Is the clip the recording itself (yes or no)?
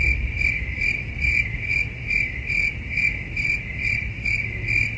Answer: yes